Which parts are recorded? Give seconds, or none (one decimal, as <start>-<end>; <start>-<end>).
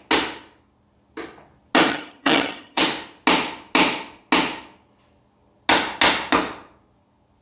0.0-1.9; 2.8-7.4